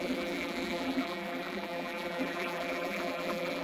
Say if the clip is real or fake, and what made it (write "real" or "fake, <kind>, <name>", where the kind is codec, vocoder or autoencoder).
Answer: fake, vocoder, BigVGAN v2